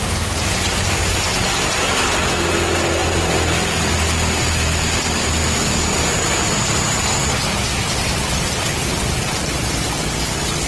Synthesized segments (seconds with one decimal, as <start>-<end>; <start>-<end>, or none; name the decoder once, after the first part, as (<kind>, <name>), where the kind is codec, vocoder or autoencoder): 0.0-3.0 (vocoder, BigVGAN v2); 5.0-10.7